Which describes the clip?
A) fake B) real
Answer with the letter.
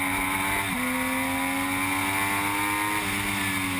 B